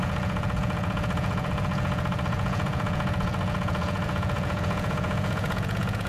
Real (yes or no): no